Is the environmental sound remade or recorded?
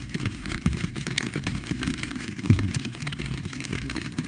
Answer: remade